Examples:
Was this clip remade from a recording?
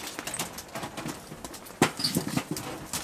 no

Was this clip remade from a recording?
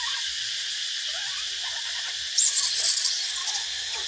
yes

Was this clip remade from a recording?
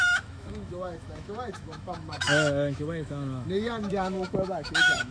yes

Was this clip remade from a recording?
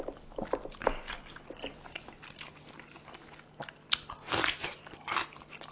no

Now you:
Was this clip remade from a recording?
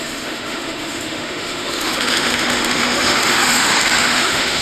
yes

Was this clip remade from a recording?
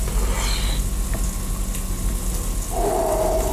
no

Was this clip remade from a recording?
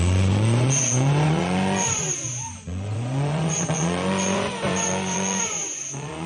yes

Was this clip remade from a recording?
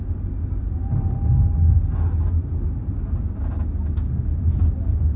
no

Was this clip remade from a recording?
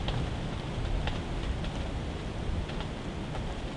no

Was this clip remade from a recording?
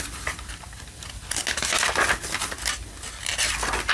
no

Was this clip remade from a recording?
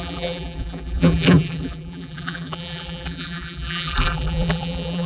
yes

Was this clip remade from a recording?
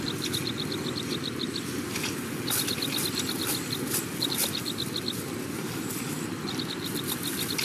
no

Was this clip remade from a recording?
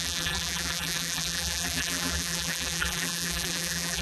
yes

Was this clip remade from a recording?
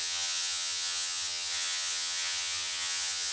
yes